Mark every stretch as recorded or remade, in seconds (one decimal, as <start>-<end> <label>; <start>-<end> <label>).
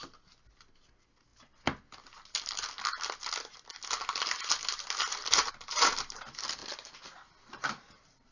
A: 0.0-8.3 recorded